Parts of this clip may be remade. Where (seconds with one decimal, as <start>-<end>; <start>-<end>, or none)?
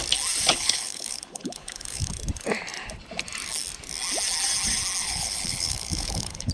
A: 0.5-2.1; 5.0-6.5